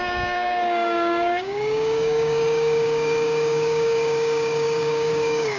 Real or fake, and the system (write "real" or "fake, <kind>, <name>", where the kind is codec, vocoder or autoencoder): fake, codec, DAC